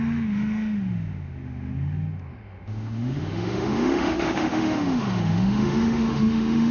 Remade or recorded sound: remade